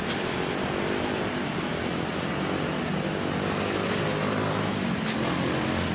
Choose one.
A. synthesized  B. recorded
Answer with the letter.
B